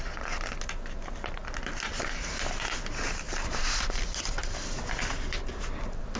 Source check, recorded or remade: recorded